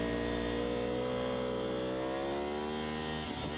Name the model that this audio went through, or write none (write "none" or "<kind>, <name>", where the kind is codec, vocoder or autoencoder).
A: none